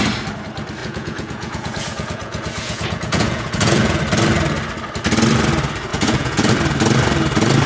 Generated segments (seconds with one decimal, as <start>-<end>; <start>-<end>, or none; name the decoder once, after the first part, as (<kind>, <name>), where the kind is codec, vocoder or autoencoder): 0.8-4.0 (vocoder, Vocos); 5.9-6.5